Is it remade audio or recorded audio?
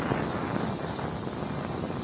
recorded